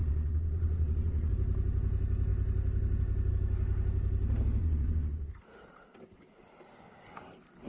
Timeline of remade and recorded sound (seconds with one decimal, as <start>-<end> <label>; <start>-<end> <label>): 0.0-1.3 remade; 1.3-4.6 recorded; 4.6-5.3 remade; 5.3-7.7 recorded